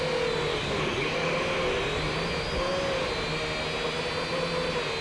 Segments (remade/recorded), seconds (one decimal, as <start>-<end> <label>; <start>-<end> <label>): 0.0-0.5 recorded; 0.5-1.3 remade; 1.3-5.0 recorded

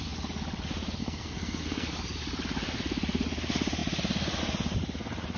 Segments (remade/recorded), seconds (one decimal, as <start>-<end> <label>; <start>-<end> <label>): 0.0-1.0 recorded; 1.0-1.9 remade; 1.9-5.4 recorded